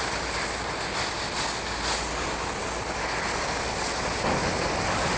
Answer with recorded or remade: recorded